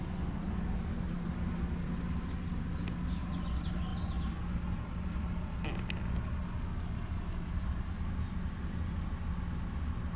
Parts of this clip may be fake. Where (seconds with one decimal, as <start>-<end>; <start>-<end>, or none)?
none